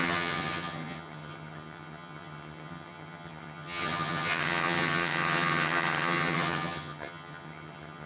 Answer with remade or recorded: remade